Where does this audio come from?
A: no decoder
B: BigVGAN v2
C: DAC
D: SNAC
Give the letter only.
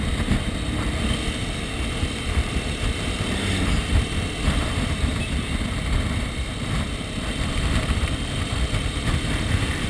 A